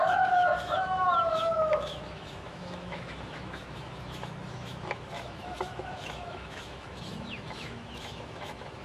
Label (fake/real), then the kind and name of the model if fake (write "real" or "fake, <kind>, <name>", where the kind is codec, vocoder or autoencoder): fake, autoencoder, DAC-VAE